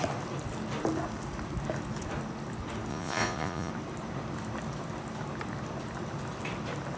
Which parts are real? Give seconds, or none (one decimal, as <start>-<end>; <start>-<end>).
0.0-2.9; 3.7-7.0